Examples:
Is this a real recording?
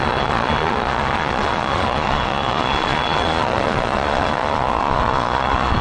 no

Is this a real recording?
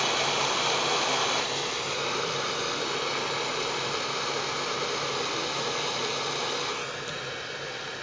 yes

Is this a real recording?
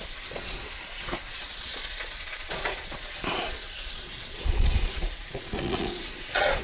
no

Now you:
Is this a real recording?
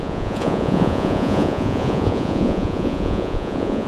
no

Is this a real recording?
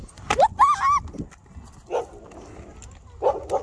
yes